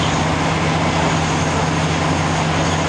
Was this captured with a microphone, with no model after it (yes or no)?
yes